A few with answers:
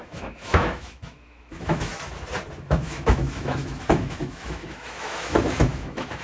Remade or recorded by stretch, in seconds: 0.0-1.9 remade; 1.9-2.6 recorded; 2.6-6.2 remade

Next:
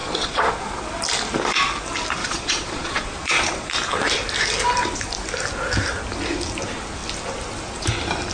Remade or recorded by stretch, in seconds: 0.0-0.6 remade; 0.6-2.2 recorded; 2.2-3.7 remade; 3.7-8.3 recorded

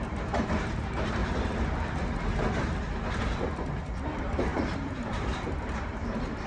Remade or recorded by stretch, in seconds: 0.0-1.2 remade; 1.2-4.0 recorded; 4.0-6.5 remade

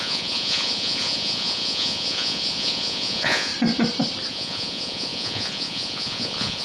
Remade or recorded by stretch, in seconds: 0.0-3.5 remade; 3.5-4.3 recorded; 4.3-6.6 remade

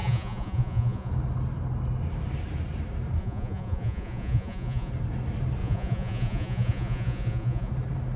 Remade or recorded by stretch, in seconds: 0.0-1.1 remade; 1.1-3.2 recorded; 3.2-4.9 remade; 4.9-5.6 recorded; 5.6-7.7 remade; 7.7-8.2 recorded

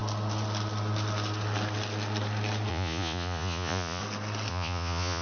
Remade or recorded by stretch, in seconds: 0.0-2.7 recorded; 2.7-4.0 remade; 4.0-4.5 recorded; 4.5-5.2 remade

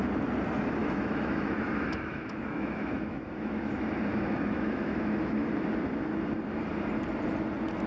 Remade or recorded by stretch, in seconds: 0.0-0.8 recorded; 0.8-3.6 remade; 3.6-4.1 recorded; 4.1-5.5 remade; 5.5-7.9 recorded

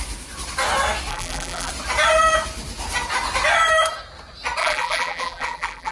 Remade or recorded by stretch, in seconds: 0.0-1.1 recorded; 1.1-1.7 remade; 1.7-4.6 recorded; 4.6-5.9 remade